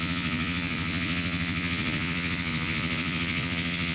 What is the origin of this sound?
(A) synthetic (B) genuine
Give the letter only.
A